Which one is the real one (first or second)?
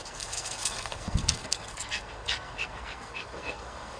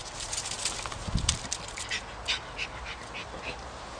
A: second